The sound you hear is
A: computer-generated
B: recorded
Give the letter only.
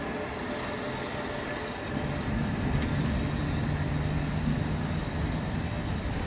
B